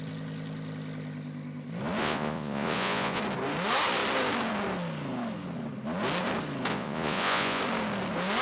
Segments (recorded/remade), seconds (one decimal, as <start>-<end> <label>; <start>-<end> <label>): 0.0-2.0 recorded; 2.0-3.2 remade; 3.2-6.7 recorded; 6.7-7.6 remade; 7.6-8.4 recorded